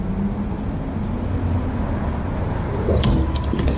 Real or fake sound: real